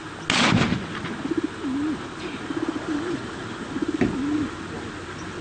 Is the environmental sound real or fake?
real